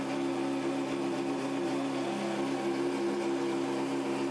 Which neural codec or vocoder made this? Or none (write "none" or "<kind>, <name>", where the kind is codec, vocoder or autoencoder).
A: none